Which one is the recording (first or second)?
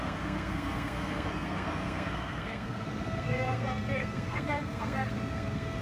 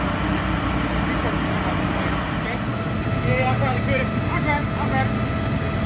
second